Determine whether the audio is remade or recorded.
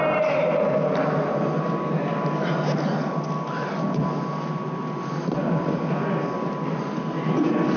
recorded